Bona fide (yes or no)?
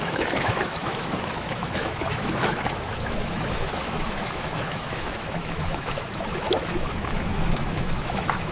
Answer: no